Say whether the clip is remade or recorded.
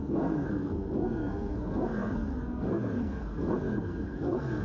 remade